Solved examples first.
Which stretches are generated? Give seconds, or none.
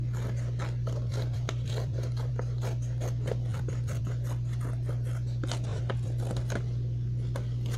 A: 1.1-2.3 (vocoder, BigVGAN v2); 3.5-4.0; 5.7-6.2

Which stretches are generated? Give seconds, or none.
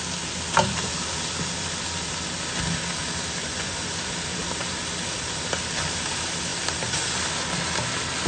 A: 3.4-4.0 (vocoder, Vocos)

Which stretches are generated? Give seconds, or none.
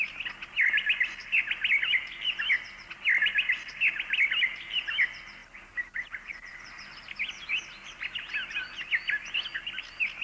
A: none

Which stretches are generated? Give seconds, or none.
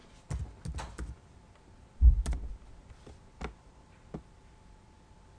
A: none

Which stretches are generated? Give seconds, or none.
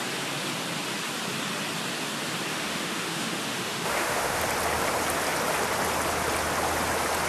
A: 2.5-4.4 (autoencoder, DAC-VAE)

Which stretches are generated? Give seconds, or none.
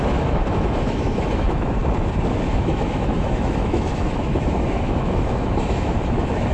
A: 0.0-1.8 (autoencoder, DAC-VAE); 2.5-6.5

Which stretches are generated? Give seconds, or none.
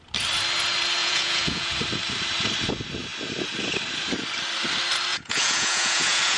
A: 1.0-1.7 (vocoder, Vocos); 5.1-6.4